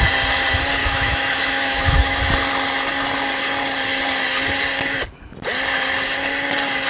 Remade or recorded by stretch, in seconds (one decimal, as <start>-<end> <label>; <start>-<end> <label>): 0.0-0.8 recorded; 0.8-2.2 remade; 2.2-6.9 recorded